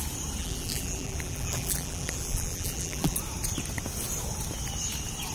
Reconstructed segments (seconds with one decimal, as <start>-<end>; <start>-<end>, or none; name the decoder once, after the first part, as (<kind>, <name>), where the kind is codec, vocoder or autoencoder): 0.4-3.2 (vocoder, BigVGAN v2)

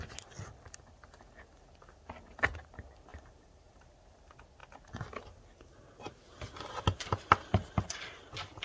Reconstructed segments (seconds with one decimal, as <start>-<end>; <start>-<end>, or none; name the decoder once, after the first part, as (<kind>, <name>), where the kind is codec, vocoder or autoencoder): 3.1-3.9 (vocoder, BigVGAN v2)